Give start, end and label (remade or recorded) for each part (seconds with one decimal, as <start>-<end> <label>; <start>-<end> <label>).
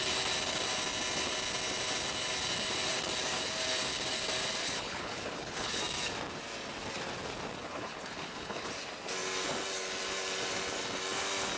0.0-4.6 recorded; 4.6-5.8 remade; 5.8-7.6 recorded; 7.6-8.7 remade; 8.7-11.6 recorded